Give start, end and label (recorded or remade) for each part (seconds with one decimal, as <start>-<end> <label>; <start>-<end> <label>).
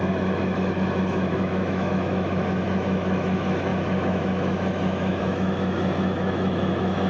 0.0-7.1 remade